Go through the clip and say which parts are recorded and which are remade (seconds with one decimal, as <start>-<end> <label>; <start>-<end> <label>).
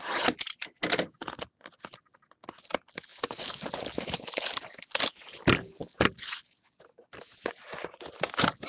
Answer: 0.0-8.7 recorded